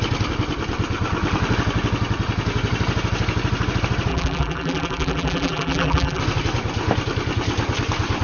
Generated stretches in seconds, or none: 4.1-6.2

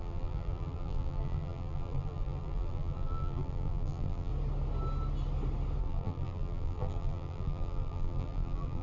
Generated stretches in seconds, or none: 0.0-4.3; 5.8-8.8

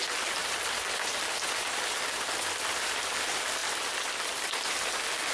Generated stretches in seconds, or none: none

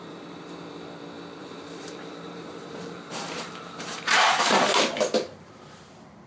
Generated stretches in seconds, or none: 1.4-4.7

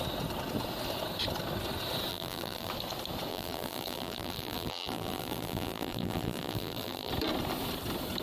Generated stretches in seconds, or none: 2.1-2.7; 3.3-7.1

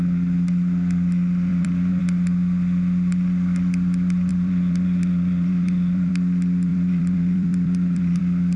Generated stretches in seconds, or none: 1.5-2.0; 4.3-6.1; 6.7-8.2